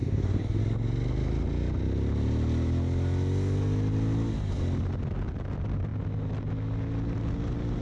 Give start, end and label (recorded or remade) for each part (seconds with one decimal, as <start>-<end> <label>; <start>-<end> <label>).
0.0-0.6 remade; 0.6-7.8 recorded